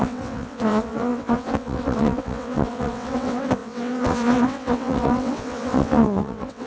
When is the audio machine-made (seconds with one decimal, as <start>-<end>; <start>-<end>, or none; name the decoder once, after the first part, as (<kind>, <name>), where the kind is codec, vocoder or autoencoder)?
0.0-6.7 (vocoder, WaveNeXt)